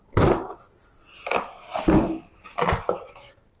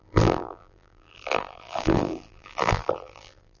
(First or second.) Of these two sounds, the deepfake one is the second